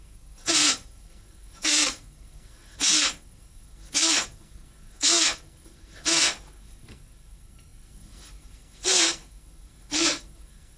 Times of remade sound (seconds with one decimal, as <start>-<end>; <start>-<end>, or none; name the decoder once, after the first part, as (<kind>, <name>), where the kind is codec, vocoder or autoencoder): 0.0-10.8 (codec, SNAC)